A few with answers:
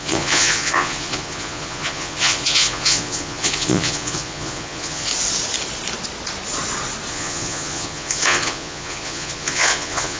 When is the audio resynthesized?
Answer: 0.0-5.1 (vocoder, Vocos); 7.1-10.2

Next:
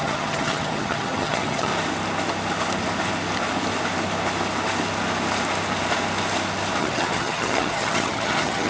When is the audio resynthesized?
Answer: 0.0-1.7 (vocoder, HiFi-GAN); 6.8-8.7

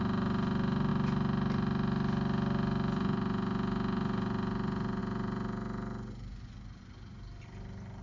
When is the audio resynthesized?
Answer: none

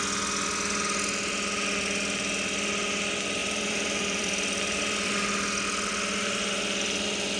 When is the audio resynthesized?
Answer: 3.4-5.1 (vocoder, BigVGAN v2)

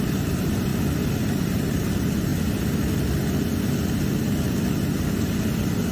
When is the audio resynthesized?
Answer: 0.0-0.7 (vocoder, BigVGAN v2); 1.4-2.3; 5.2-5.9